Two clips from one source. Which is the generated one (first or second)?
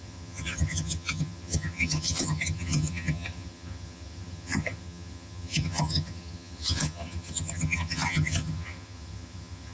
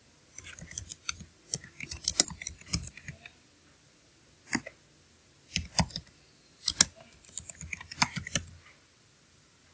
first